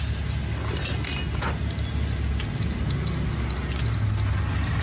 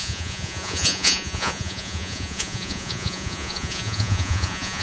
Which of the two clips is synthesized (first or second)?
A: second